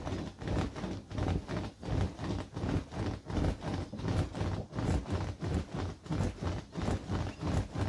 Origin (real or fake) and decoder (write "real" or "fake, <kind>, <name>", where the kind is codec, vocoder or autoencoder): real